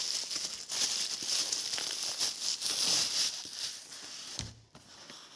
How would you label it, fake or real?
real